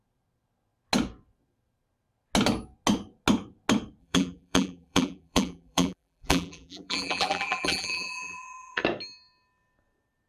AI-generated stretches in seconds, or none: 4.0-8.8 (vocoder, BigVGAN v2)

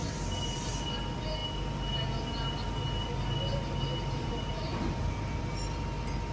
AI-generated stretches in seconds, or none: 0.0-0.7 (vocoder, BigVGAN v2); 4.7-5.4

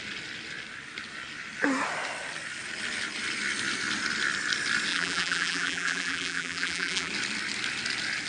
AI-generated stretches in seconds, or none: 4.9-7.1 (vocoder, BigVGAN v2)

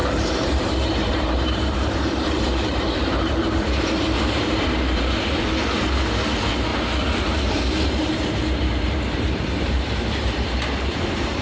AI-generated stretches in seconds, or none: 0.0-5.1 (vocoder, BigVGAN v2); 6.7-11.4